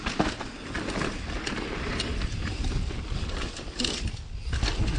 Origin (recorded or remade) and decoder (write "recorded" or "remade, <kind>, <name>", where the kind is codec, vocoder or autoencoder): recorded